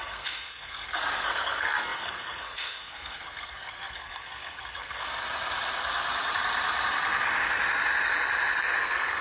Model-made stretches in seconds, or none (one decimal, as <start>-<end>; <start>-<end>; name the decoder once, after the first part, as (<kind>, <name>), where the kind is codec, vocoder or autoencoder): 0.0-5.0 (codec, SNAC); 8.6-9.2